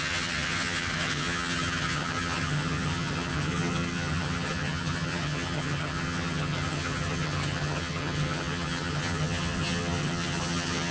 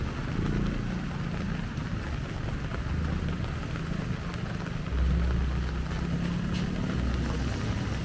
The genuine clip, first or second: second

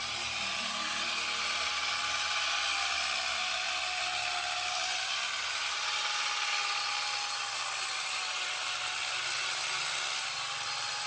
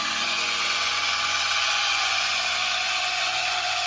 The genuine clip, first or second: first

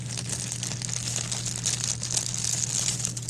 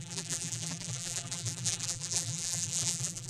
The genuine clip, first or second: first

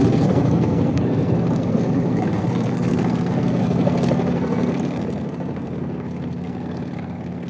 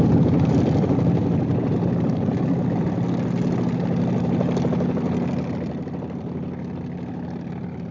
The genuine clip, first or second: second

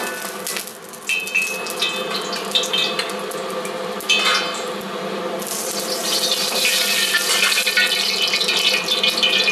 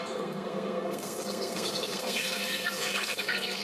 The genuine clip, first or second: first